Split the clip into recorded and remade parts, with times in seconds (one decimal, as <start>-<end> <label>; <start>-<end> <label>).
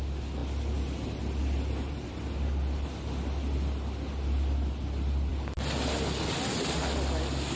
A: 0.0-7.6 recorded